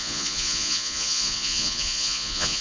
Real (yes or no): no